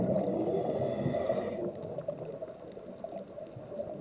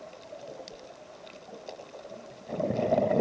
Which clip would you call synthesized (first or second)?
second